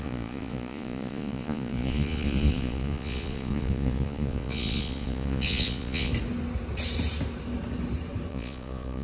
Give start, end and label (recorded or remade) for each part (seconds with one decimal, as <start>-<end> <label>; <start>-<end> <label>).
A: 0.0-6.1 remade; 6.1-8.3 recorded; 8.3-9.0 remade